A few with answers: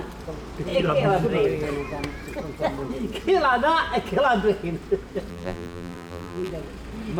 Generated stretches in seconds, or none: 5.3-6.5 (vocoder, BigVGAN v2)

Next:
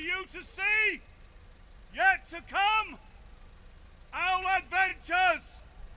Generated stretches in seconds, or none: none

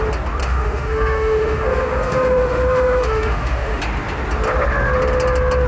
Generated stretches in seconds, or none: 0.4-3.8 (autoencoder, DAC-VAE)

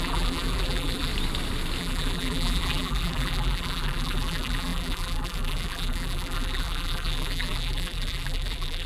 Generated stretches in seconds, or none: 0.0-1.1 (vocoder, BigVGAN v2); 1.8-8.9

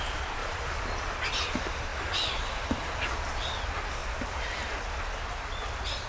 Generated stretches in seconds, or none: 0.4-1.5 (vocoder, BigVGAN v2); 1.9-3.1; 4.0-4.7

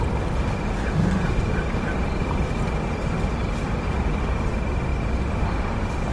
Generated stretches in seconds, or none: none